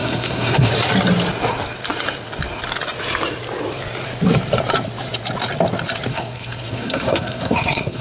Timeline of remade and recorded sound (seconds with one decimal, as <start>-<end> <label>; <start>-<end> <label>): 0.0-0.7 remade; 0.7-6.1 recorded; 6.1-8.0 remade